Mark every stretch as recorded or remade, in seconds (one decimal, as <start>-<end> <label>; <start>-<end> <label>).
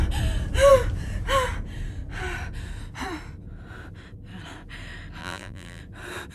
0.0-5.2 recorded; 5.2-5.8 remade; 5.8-6.3 recorded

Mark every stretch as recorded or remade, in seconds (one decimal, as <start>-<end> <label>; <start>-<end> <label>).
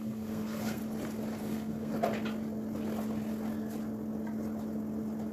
0.0-0.8 remade; 0.8-1.4 recorded; 1.4-1.9 remade; 1.9-5.3 recorded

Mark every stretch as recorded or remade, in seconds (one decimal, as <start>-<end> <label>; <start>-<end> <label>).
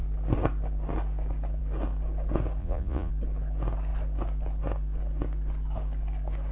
0.0-2.6 recorded; 2.6-3.1 remade; 3.1-6.5 recorded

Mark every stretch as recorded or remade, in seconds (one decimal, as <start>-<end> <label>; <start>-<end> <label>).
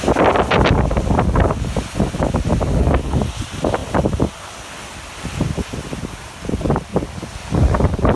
0.0-8.2 recorded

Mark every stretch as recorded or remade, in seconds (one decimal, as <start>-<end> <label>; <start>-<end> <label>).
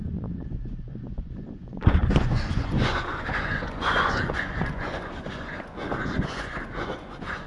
0.0-7.5 remade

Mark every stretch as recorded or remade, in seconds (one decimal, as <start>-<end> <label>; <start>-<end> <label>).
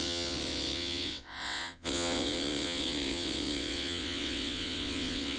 0.0-5.4 remade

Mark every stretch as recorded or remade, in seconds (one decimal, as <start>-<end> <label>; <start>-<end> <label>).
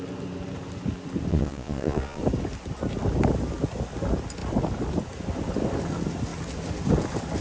0.0-1.3 recorded; 1.3-2.2 remade; 2.2-7.4 recorded